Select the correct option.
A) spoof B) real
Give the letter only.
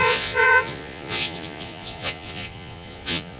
A